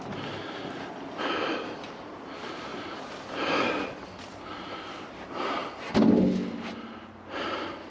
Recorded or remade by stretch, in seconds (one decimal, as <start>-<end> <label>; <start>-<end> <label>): 0.0-7.9 recorded